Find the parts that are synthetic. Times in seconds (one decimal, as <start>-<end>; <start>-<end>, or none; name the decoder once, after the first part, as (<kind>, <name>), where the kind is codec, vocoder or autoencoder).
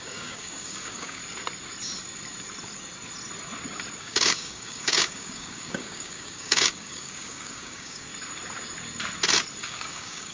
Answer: 0.0-1.2 (codec, DAC); 4.0-8.1; 9.6-10.3